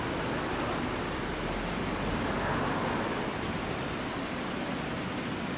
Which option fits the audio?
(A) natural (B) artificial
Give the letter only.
A